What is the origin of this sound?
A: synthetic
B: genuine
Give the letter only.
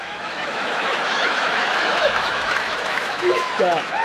A